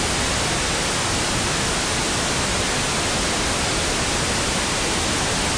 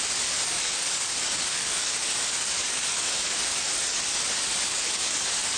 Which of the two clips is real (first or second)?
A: first